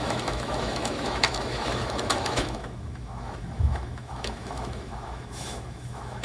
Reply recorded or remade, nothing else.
remade